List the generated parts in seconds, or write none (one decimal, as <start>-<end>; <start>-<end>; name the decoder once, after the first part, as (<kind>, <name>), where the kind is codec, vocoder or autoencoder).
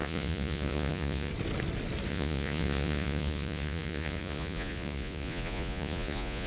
0.0-1.3 (vocoder, Vocos); 2.1-6.5